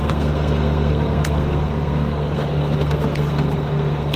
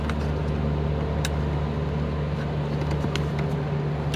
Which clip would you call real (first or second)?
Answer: second